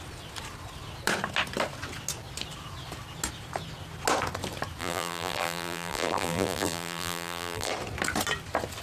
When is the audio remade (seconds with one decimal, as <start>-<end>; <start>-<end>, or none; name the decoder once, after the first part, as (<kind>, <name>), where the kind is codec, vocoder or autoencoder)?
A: 4.8-7.7 (vocoder, BigVGAN v2)